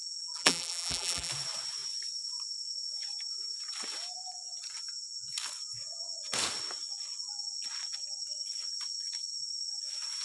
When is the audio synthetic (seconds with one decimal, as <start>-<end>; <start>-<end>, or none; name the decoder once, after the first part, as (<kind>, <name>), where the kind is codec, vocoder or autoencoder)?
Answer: 0.0-1.3 (vocoder, BigVGAN v2)